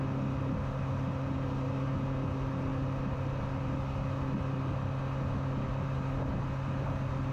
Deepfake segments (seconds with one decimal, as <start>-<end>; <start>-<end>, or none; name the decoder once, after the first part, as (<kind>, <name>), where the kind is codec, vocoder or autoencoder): none